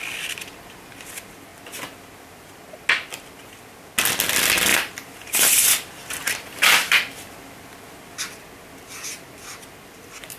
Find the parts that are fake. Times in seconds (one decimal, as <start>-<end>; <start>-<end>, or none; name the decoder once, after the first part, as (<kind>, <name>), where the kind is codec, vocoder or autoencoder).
4.7-5.6 (vocoder, BigVGAN v2); 6.2-7.0